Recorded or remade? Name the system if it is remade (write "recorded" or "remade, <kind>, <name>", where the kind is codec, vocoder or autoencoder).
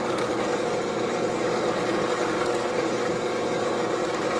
remade, codec, DAC